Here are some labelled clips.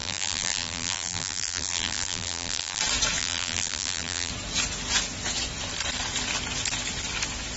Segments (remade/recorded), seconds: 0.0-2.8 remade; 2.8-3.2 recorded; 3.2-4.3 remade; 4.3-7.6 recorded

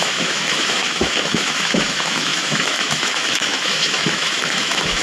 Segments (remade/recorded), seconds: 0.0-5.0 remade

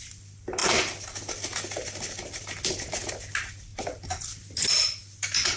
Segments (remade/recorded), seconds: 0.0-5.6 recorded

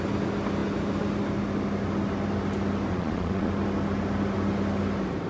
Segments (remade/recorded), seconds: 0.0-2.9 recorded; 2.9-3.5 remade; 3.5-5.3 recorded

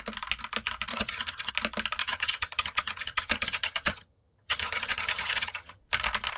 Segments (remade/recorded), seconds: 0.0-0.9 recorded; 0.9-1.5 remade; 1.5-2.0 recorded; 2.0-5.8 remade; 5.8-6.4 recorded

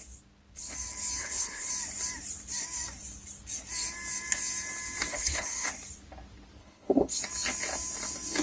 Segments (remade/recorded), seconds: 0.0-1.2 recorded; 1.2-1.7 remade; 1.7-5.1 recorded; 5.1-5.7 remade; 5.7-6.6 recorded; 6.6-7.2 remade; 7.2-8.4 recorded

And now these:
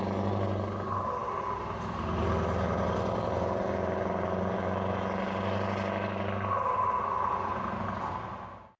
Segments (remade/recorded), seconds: 0.0-8.8 recorded

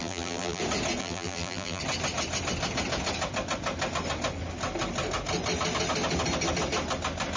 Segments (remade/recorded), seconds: 0.0-0.6 remade; 0.6-1.0 recorded; 1.0-1.8 remade; 1.8-7.4 recorded